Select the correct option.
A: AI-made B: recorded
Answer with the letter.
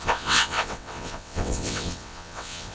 A